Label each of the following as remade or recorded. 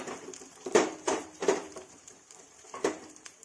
remade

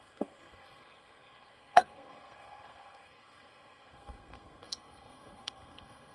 remade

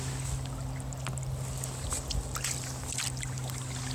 recorded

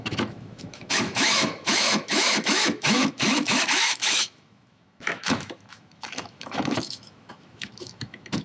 remade